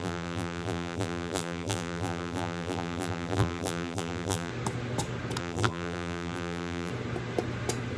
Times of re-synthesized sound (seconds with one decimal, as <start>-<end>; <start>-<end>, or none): 0.0-4.5; 5.4-6.9